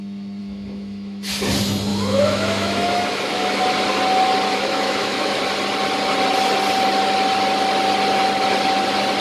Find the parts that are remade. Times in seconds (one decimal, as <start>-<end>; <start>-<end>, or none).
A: 0.4-1.3; 1.9-3.6; 4.5-5.4